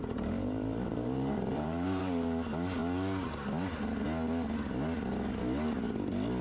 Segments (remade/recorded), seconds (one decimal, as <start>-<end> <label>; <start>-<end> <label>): 0.0-2.0 remade; 2.0-6.4 recorded